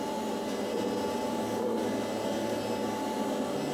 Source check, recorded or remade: recorded